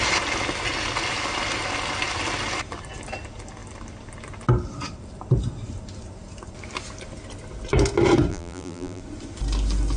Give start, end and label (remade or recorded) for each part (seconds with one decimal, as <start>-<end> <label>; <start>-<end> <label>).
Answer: 0.0-8.3 recorded; 8.3-9.0 remade; 9.0-10.0 recorded